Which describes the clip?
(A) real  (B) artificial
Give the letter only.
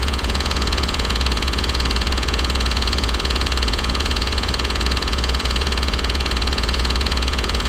B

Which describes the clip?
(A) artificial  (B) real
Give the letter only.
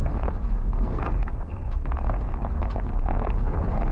A